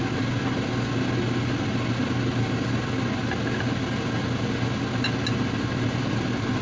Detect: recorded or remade recorded